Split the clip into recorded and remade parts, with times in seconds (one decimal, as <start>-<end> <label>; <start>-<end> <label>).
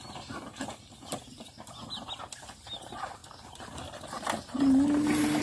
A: 0.0-5.4 recorded